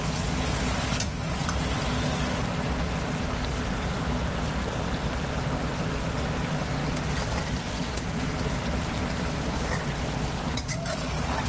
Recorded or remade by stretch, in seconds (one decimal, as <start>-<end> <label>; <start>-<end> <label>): 0.0-11.5 recorded